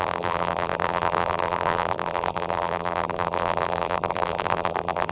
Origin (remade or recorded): remade